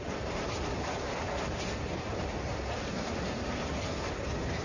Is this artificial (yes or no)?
no